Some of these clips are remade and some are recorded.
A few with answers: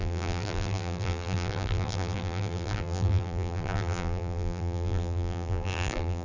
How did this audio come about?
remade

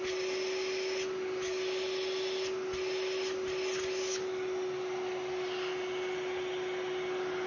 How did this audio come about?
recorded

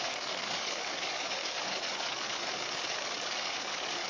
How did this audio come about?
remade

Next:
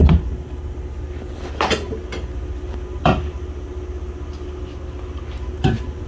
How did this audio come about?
recorded